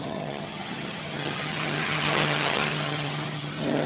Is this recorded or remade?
remade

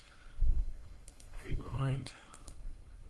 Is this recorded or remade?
remade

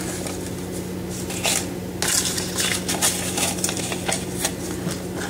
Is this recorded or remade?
recorded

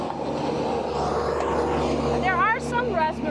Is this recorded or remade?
recorded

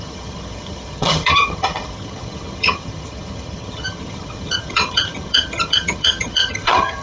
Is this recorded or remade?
remade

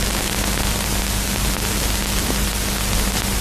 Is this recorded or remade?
recorded